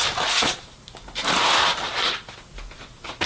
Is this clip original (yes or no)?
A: yes